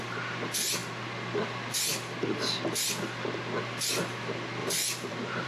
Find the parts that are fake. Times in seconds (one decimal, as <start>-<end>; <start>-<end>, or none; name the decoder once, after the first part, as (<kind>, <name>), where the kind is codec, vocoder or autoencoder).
4.6-5.5 (vocoder, BigVGAN v2)